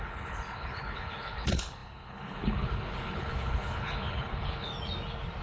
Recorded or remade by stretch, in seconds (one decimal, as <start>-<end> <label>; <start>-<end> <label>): 0.0-4.7 remade; 4.7-5.4 recorded